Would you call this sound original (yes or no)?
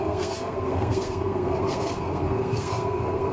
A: no